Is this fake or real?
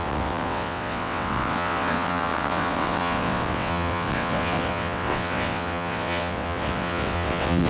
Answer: fake